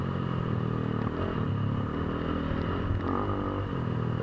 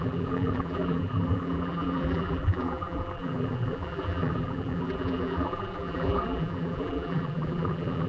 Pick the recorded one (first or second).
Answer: first